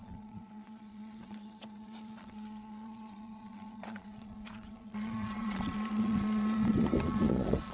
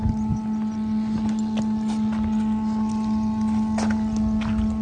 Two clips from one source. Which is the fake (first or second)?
first